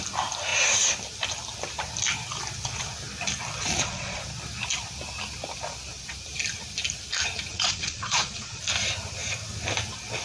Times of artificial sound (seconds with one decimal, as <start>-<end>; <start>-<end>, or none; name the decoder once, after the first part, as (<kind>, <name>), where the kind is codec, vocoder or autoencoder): 3.6-4.2 (vocoder, Vocos); 7.5-8.6